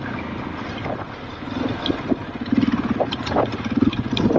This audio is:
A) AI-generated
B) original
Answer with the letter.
B